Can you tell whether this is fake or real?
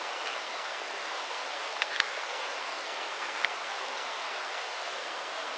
fake